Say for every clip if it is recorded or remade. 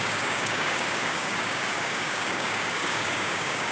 remade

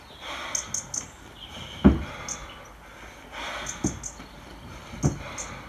recorded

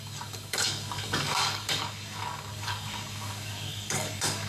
remade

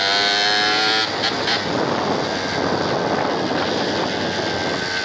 recorded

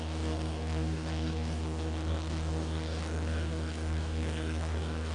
remade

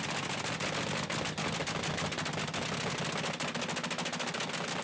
recorded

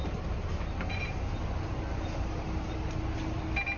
recorded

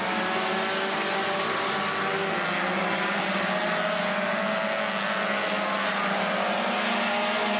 recorded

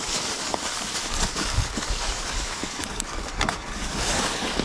remade